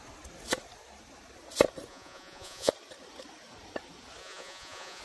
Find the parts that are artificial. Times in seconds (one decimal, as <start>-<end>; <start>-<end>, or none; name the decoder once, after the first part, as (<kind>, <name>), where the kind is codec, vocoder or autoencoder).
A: 1.9-2.7 (vocoder, Vocos); 4.2-5.0